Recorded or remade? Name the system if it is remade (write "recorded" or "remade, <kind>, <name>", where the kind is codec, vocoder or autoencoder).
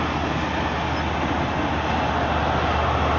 recorded